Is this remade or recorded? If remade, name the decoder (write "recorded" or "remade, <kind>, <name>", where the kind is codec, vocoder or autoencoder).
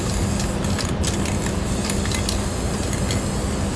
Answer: recorded